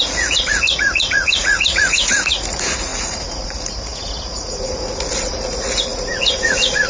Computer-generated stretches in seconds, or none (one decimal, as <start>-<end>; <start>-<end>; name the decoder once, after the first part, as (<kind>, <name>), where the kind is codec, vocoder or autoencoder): 0.0-6.9 (vocoder, Vocos)